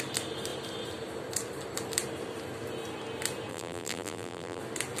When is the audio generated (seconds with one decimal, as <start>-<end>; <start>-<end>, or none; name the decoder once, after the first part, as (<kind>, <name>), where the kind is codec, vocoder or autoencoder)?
3.5-4.6 (vocoder, BigVGAN v2)